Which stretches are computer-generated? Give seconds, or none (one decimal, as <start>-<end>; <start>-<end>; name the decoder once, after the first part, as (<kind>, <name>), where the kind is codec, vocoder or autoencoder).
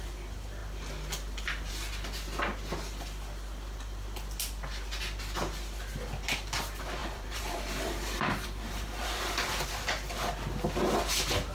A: 7.0-9.7 (vocoder, BigVGAN v2)